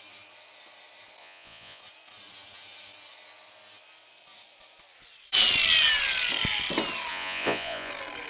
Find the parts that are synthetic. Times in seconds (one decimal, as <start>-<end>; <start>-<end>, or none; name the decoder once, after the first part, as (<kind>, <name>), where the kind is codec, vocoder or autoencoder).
1.2-1.8 (vocoder, Vocos); 7.1-7.9